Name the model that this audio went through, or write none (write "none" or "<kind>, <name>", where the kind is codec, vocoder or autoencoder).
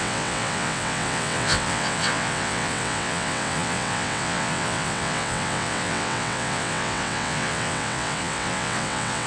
vocoder, WaveNeXt